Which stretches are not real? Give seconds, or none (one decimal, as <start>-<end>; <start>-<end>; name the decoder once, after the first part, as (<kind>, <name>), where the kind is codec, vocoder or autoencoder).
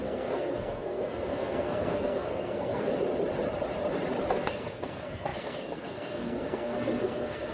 0.0-2.9 (codec, SNAC); 4.3-7.5